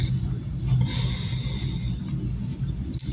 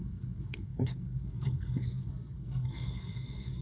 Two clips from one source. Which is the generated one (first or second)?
second